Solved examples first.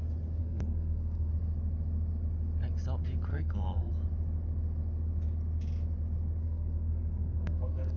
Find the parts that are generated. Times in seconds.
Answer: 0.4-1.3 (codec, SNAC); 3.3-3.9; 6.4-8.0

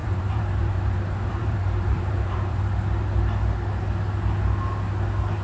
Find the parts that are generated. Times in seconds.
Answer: 0.0-2.6 (vocoder, BigVGAN v2)